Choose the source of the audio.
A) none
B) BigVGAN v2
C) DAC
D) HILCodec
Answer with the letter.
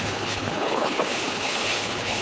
D